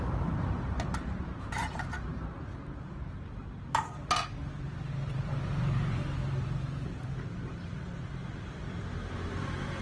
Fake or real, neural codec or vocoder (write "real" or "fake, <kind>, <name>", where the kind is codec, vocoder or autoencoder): fake, vocoder, BigVGAN v2